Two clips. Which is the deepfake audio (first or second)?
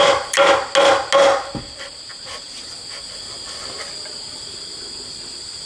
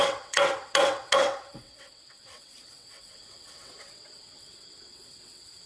second